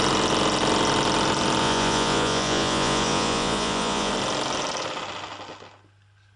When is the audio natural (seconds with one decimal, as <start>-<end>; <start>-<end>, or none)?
0.0-1.6; 4.1-6.4